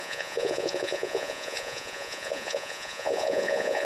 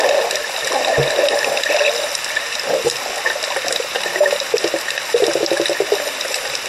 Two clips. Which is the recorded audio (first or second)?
second